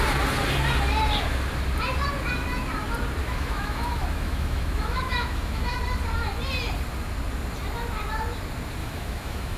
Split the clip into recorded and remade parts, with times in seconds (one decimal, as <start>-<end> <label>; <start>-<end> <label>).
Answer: 0.0-3.2 recorded; 3.2-5.8 remade; 5.8-8.8 recorded; 8.8-9.6 remade